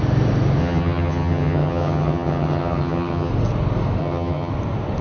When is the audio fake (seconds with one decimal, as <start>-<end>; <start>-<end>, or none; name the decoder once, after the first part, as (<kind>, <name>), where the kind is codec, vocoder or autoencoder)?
0.6-3.3 (vocoder, HiFi-GAN); 4.0-4.5